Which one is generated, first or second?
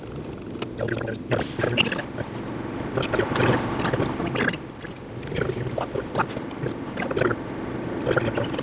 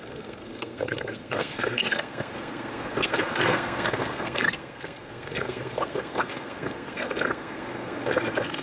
second